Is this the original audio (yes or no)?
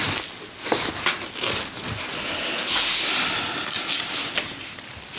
yes